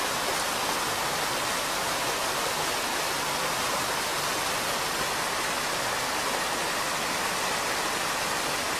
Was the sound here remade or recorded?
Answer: recorded